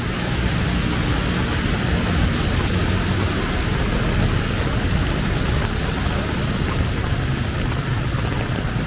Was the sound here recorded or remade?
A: recorded